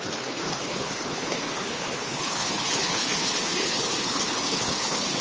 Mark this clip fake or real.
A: fake